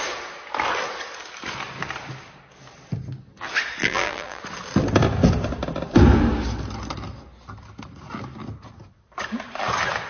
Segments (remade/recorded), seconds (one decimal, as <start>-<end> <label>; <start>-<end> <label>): 0.0-3.8 recorded; 3.8-4.4 remade; 4.4-10.1 recorded

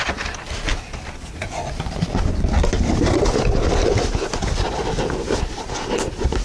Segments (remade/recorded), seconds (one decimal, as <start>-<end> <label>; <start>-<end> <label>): 0.0-6.4 recorded

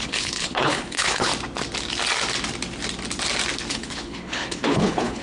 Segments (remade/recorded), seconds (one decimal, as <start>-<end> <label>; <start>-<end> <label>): 0.0-1.3 remade; 1.3-3.7 recorded; 3.7-5.2 remade